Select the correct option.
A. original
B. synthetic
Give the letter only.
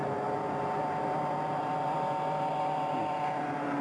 A